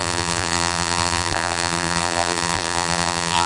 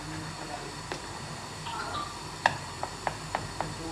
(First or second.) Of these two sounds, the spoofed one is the first